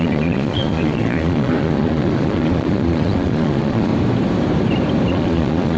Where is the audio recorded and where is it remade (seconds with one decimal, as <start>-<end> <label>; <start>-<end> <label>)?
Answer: 0.0-3.9 remade; 3.9-5.1 recorded; 5.1-5.8 remade